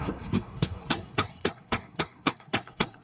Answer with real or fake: fake